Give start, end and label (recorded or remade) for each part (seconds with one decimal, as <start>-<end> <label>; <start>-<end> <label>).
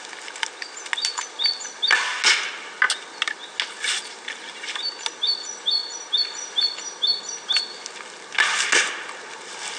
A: 0.0-9.8 recorded